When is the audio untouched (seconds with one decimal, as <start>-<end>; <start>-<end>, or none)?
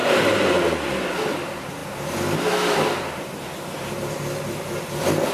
0.0-5.3